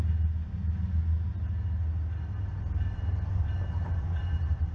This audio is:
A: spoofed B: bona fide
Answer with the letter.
B